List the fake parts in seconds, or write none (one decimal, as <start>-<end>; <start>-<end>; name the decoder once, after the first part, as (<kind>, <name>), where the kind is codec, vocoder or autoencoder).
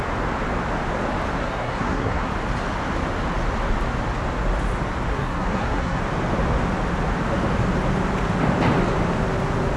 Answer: 1.4-2.3 (codec, SNAC); 5.1-6.0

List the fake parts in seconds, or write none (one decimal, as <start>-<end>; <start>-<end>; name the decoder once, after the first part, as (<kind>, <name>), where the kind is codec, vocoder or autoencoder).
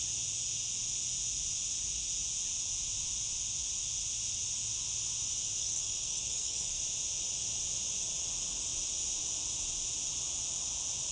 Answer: 5.6-6.8 (codec, SNAC)